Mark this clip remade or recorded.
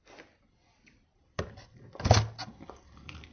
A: recorded